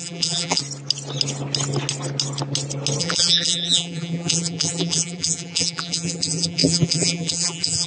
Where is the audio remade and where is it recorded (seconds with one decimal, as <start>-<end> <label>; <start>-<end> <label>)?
0.0-0.6 remade; 0.6-3.0 recorded; 3.0-7.9 remade